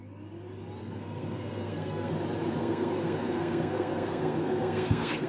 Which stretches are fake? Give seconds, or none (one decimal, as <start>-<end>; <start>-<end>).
0.8-2.1; 2.6-5.3